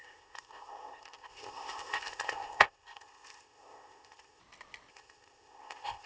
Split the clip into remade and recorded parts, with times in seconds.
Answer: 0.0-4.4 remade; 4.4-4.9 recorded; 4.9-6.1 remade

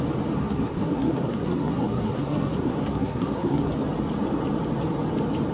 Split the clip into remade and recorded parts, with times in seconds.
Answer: 0.0-0.4 recorded; 0.4-3.7 remade; 3.7-5.5 recorded

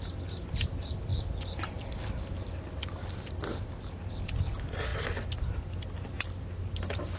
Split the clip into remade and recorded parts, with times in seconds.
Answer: 0.0-7.2 recorded

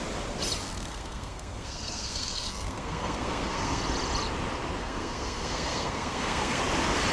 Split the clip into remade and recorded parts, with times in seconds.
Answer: 0.0-0.6 recorded; 0.6-3.8 remade; 3.8-4.8 recorded; 4.8-6.6 remade; 6.6-7.1 recorded

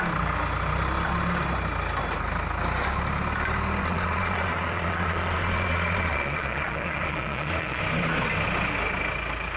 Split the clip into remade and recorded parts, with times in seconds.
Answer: 0.0-3.8 recorded; 3.8-7.8 remade; 7.8-9.6 recorded

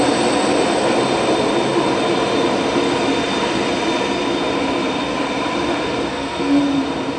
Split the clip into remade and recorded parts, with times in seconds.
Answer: 0.0-6.1 recorded; 6.1-6.6 remade; 6.6-7.2 recorded